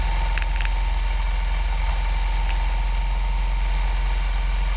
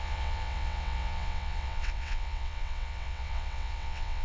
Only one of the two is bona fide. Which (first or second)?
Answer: first